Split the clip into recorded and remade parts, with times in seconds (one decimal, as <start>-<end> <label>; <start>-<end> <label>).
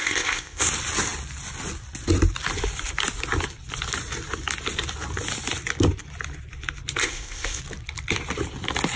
0.0-0.7 remade; 0.7-7.0 recorded; 7.0-7.6 remade; 7.6-9.0 recorded